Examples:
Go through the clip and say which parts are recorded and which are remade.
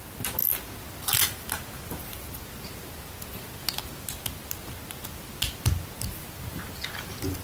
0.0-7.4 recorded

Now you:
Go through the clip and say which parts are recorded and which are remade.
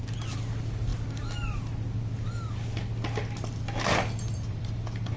0.0-5.2 recorded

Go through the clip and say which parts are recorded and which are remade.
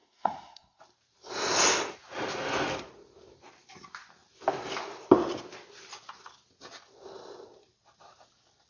0.0-0.8 remade; 0.8-8.7 recorded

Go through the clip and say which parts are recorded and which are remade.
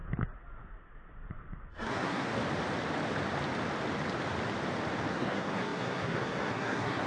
0.0-1.7 recorded; 1.7-2.3 remade; 2.3-5.1 recorded; 5.1-7.1 remade